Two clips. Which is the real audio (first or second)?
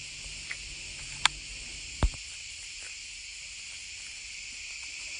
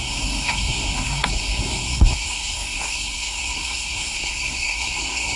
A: first